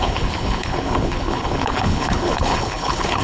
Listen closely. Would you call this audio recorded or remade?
remade